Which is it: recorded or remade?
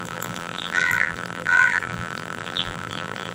remade